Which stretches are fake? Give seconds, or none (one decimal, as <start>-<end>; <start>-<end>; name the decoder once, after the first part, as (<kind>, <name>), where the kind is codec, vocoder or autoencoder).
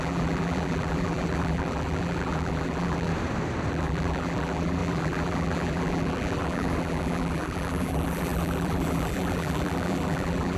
0.0-3.1 (vocoder, BigVGAN v2); 3.7-10.6